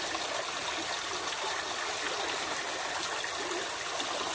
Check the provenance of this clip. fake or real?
real